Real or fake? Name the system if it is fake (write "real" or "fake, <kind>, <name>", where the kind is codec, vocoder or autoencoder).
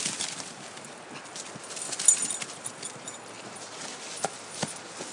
real